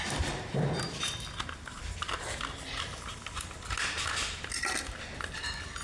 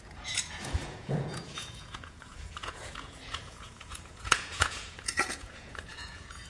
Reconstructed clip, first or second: second